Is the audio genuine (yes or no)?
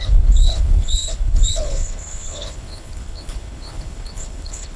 no